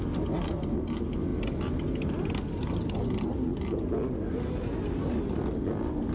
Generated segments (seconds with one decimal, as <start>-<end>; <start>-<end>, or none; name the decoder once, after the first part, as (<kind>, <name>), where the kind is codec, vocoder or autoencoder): none